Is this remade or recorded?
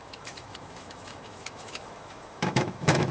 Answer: remade